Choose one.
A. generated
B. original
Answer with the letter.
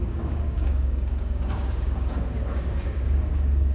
A